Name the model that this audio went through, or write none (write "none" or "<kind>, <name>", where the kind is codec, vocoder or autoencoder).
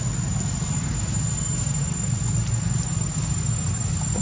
none